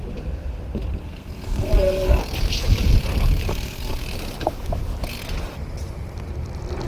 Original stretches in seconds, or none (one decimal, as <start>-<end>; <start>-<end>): 0.0-1.0; 2.2-3.5; 4.0-6.9